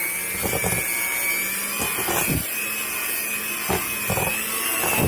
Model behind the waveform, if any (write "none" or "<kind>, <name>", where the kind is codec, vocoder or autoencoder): none